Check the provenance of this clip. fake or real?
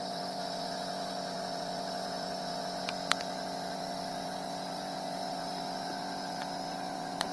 fake